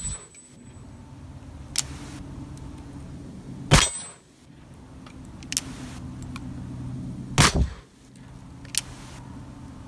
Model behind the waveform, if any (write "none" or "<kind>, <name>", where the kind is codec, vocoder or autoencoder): none